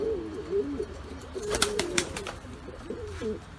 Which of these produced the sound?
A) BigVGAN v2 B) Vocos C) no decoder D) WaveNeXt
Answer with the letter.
A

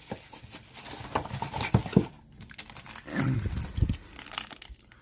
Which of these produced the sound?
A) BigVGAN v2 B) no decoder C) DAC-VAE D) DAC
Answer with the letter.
B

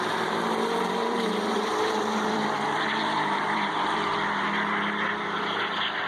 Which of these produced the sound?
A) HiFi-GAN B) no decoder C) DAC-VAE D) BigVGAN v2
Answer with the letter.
D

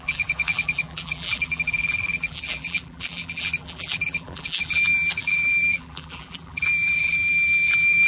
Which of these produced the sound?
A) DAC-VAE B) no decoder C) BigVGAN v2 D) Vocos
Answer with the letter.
C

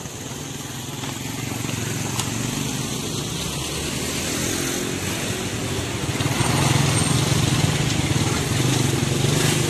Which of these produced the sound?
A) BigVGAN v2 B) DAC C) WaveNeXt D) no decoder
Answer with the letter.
D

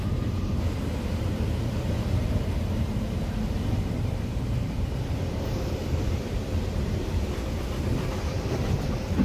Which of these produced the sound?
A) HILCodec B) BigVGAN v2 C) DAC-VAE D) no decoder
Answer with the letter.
B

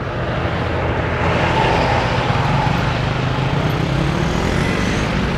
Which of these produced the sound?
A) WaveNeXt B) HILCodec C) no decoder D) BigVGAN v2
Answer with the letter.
C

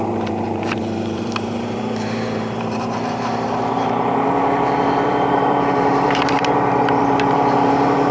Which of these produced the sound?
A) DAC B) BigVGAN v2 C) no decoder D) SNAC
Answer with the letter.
B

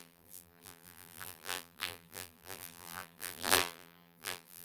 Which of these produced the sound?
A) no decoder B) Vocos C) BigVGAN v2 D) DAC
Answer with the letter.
C